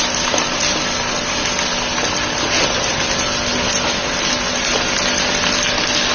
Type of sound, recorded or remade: recorded